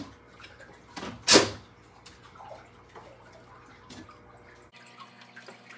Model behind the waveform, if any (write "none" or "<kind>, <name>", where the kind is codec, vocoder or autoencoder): none